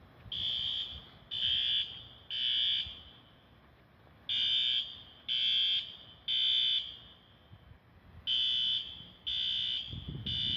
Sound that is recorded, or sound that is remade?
recorded